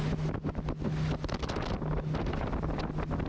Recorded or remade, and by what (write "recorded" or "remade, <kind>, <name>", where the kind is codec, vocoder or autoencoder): recorded